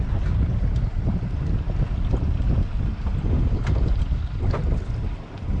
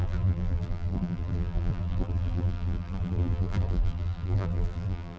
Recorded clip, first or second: first